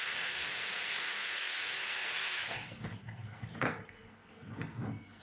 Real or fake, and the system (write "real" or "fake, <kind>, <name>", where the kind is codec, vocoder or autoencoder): fake, codec, SNAC